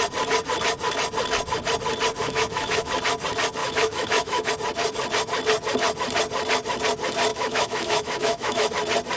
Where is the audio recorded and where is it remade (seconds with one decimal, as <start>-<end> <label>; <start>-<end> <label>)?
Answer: 0.0-2.2 recorded; 2.2-2.9 remade; 2.9-3.6 recorded; 3.6-4.5 remade; 4.5-7.3 recorded; 7.3-8.7 remade; 8.7-9.2 recorded